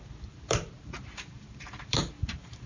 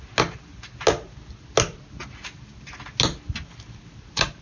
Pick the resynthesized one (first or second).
first